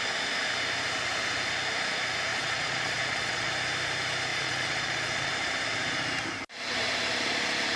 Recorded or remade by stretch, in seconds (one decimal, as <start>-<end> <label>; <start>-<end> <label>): 0.0-2.3 recorded; 2.3-3.5 remade; 3.5-4.3 recorded; 4.3-5.3 remade; 5.3-7.8 recorded